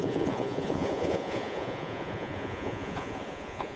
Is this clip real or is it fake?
fake